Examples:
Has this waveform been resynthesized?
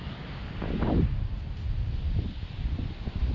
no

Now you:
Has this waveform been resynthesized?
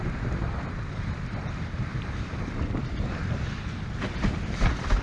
yes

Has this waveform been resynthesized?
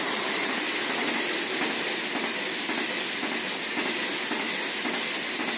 no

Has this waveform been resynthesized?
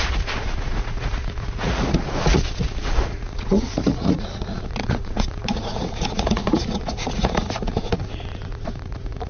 yes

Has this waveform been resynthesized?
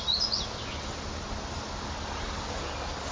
no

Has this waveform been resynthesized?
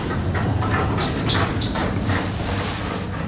no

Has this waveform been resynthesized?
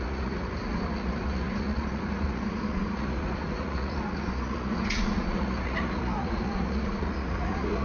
yes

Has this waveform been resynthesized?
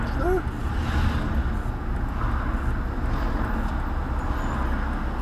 no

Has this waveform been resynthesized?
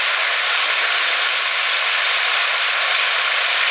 no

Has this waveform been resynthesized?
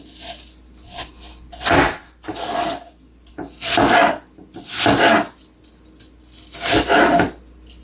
no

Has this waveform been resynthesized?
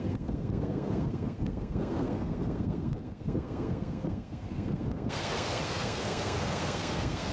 yes